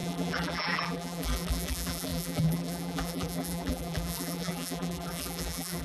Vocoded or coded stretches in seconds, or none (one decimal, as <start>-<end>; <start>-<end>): 0.0-5.8

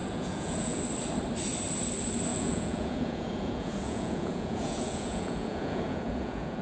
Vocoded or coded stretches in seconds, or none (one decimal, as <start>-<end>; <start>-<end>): 0.0-0.8; 2.3-6.6

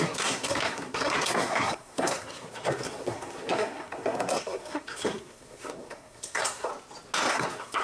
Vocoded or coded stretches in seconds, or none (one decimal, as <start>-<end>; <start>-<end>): 0.0-6.7; 7.3-7.8